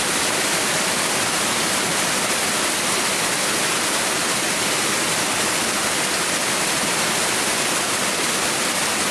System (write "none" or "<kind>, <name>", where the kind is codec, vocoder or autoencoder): none